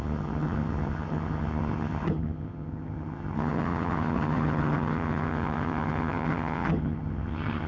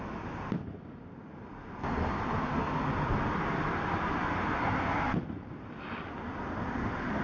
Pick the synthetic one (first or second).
first